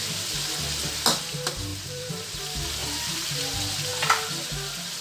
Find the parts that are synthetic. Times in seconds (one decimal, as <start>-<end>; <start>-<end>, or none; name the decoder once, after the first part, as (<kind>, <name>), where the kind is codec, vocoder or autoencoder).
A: 1.7-2.4 (vocoder, BigVGAN v2); 2.8-3.4